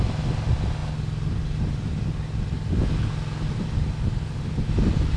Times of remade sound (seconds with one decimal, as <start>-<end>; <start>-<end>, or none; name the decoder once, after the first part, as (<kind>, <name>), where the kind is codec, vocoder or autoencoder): none